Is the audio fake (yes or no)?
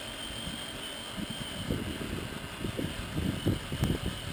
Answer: no